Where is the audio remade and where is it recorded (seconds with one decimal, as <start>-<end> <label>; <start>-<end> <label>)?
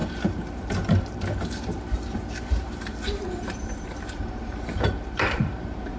0.0-6.0 remade